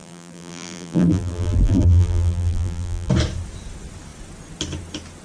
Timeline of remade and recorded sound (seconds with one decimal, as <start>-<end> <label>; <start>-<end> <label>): 0.0-3.1 remade; 3.1-5.2 recorded